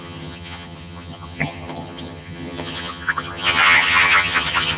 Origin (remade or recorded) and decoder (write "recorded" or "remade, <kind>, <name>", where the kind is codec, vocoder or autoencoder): remade, vocoder, HiFi-GAN